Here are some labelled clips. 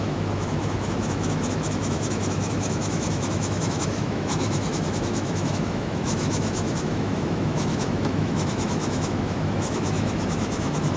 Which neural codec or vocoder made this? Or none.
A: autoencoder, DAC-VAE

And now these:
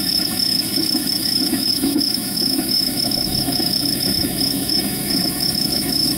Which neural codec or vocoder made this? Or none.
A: autoencoder, DAC-VAE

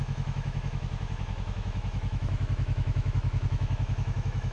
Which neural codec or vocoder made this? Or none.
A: autoencoder, DAC-VAE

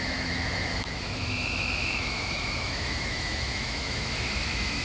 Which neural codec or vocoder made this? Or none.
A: autoencoder, DAC-VAE